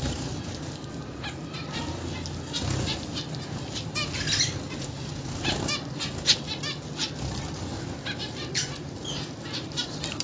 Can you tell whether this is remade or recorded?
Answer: recorded